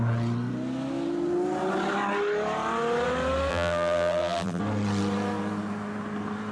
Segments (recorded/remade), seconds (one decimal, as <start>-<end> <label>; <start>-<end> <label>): 0.0-3.5 recorded; 3.5-4.6 remade; 4.6-6.5 recorded

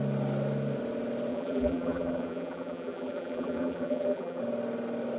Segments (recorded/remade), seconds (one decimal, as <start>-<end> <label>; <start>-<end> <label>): 0.0-1.3 recorded; 1.3-4.4 remade; 4.4-5.2 recorded

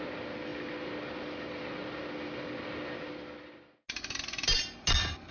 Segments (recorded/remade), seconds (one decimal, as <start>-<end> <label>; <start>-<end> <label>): 0.0-5.3 recorded

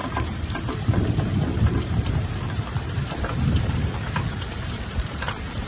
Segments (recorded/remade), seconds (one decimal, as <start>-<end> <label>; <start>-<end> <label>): 0.0-5.7 remade